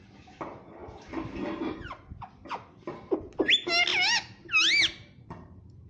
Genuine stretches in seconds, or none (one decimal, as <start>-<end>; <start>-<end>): 0.0-5.9